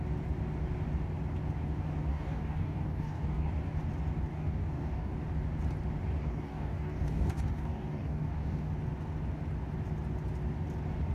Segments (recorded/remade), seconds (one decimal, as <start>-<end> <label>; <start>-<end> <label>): 0.0-2.1 recorded; 2.1-3.5 remade; 3.5-4.3 recorded; 4.3-5.1 remade; 5.1-6.2 recorded; 6.2-8.7 remade; 8.7-11.1 recorded